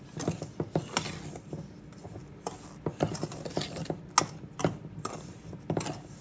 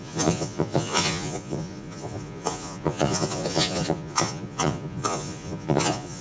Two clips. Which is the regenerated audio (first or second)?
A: second